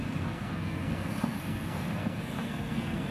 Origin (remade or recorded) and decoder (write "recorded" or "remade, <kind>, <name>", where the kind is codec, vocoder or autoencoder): remade, codec, SNAC